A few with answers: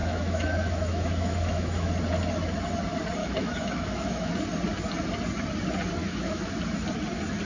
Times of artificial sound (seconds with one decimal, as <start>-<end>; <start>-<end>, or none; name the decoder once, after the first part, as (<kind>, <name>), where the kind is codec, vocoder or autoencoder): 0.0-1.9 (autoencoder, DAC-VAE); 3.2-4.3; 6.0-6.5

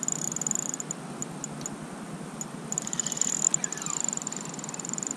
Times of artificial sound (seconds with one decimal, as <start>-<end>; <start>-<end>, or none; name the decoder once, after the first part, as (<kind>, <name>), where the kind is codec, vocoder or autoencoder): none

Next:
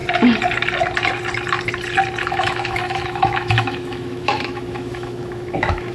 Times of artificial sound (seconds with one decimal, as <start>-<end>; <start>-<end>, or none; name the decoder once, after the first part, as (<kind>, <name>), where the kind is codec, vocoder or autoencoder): 2.2-5.9 (autoencoder, DAC-VAE)